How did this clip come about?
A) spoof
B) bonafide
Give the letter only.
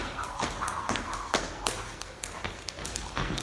A